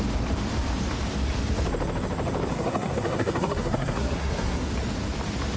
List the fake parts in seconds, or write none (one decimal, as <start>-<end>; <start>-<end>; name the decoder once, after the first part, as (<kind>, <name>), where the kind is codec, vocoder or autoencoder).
2.5-4.7 (codec, SNAC)